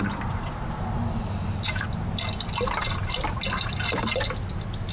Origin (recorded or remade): recorded